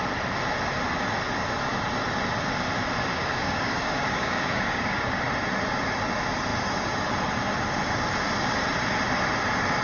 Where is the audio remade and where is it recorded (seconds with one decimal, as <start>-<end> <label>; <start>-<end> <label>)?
0.0-3.1 recorded; 3.1-5.2 remade; 5.2-9.8 recorded